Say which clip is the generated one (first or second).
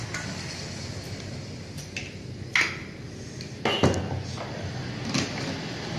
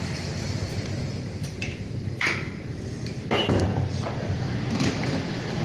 second